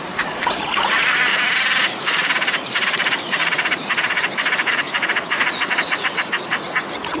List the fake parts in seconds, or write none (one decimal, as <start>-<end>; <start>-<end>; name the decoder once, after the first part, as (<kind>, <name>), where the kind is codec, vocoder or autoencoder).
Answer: 0.0-1.3 (vocoder, Vocos); 1.8-7.2